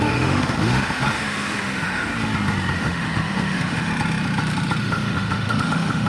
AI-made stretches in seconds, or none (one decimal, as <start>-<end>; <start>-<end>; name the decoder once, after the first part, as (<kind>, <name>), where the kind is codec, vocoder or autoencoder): 0.0-2.1 (autoencoder, DAC-VAE); 2.7-3.9; 4.8-6.1